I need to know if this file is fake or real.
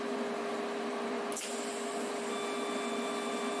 real